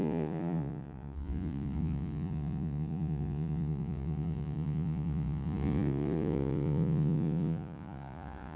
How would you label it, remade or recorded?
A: remade